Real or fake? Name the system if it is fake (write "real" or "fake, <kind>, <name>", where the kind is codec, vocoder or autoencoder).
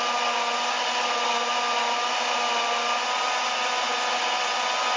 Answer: real